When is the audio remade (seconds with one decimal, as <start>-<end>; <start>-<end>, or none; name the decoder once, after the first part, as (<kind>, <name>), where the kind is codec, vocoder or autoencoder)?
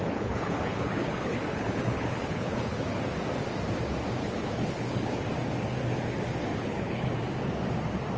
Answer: 0.0-3.0 (codec, HILCodec); 4.2-5.2; 6.5-7.1